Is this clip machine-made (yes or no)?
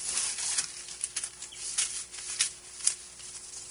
no